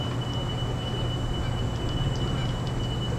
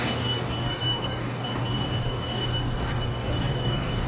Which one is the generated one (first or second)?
second